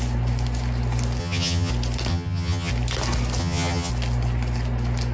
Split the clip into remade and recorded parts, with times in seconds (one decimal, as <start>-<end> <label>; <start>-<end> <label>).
0.0-1.2 recorded; 1.2-1.7 remade; 1.7-2.1 recorded; 2.1-2.7 remade; 2.7-3.4 recorded; 3.4-3.9 remade; 3.9-5.1 recorded